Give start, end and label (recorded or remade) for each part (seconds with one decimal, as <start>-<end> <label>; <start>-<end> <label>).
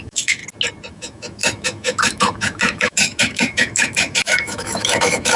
0.0-0.4 remade; 0.4-0.9 recorded; 0.9-5.4 remade